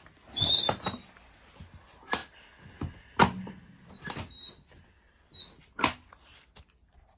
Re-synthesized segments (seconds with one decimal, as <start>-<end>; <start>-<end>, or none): none